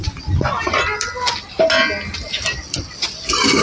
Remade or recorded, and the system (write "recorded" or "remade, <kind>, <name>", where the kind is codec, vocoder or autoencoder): recorded